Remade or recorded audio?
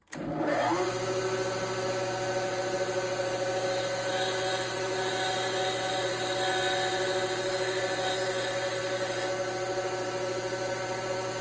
recorded